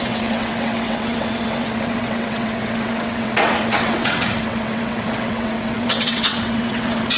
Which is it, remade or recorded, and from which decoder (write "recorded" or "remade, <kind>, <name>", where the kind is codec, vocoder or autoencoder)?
remade, vocoder, WaveNeXt